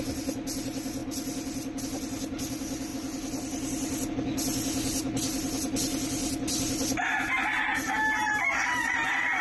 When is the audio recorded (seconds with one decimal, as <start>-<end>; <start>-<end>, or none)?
0.0-9.4

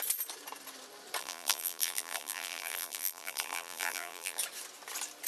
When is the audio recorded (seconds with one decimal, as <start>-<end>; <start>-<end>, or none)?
0.0-1.2; 4.4-5.3

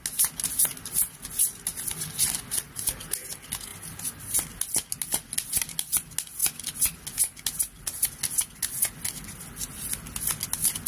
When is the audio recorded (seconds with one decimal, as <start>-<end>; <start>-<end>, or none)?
0.0-3.7; 4.3-10.9

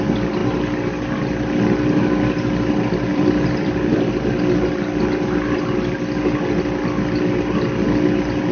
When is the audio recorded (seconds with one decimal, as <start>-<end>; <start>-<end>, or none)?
0.0-3.1; 4.1-8.5

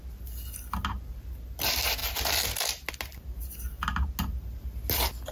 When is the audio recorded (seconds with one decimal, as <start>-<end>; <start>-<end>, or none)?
0.0-5.3